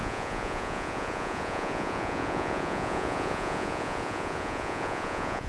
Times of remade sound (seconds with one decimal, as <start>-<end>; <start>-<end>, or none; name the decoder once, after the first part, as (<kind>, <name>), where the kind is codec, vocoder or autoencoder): 0.0-5.5 (vocoder, Vocos)